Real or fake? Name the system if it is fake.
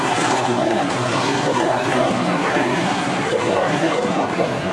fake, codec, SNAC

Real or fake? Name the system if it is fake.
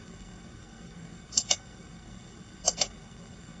fake, codec, SNAC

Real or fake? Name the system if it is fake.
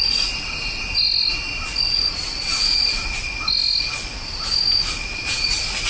real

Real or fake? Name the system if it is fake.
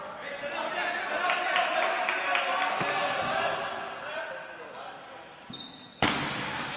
real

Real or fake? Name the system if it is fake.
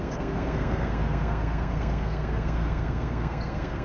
fake, codec, SNAC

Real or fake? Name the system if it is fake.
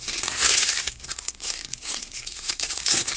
fake, codec, SNAC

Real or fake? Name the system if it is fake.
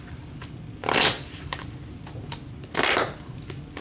real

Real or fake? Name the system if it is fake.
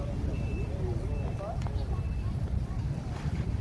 real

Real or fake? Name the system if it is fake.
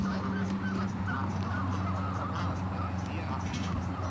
real